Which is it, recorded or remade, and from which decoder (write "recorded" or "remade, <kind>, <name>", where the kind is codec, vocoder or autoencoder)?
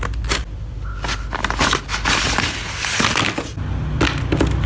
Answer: recorded